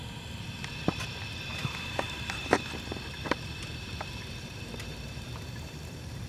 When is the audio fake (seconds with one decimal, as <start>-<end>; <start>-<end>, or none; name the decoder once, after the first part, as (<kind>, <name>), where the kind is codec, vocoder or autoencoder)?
1.5-5.3 (vocoder, BigVGAN v2)